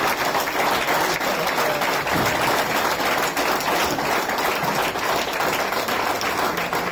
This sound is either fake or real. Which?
real